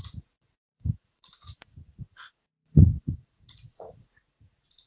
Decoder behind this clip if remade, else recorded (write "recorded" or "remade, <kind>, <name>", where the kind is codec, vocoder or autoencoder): remade, vocoder, Vocos